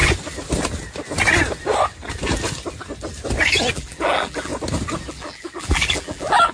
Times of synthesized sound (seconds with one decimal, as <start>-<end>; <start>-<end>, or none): 3.7-4.5; 5.1-6.5